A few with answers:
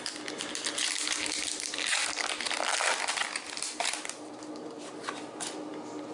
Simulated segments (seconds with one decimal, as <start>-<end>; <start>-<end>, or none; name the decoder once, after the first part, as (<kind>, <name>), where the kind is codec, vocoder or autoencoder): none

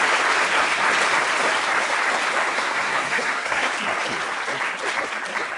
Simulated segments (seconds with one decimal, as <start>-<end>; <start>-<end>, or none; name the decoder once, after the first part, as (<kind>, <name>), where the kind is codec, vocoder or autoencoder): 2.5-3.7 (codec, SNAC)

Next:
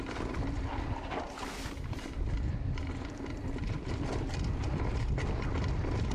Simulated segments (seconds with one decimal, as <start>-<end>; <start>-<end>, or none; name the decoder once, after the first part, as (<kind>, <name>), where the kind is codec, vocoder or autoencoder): 4.1-5.0 (vocoder, BigVGAN v2)

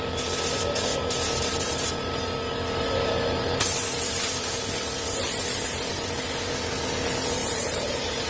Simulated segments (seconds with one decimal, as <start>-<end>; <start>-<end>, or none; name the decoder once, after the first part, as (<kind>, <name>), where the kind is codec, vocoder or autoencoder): 7.4-8.3 (vocoder, BigVGAN v2)

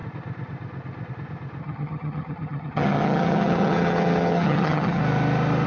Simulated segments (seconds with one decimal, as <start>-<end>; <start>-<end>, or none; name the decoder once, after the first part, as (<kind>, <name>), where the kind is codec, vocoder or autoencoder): 1.6-5.0 (vocoder, HiFi-GAN)

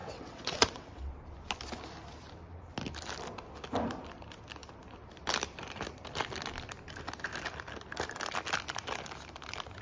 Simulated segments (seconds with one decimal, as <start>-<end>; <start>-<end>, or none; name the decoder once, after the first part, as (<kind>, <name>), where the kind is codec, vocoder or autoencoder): 0.0-1.1 (vocoder, WaveNeXt)

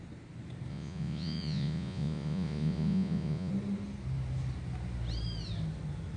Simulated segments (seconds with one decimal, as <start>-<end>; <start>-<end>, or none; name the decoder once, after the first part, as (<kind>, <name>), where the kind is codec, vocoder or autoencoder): 0.7-3.5 (vocoder, Vocos)